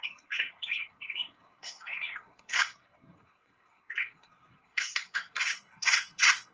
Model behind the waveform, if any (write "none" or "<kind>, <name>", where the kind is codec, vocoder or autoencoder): codec, SNAC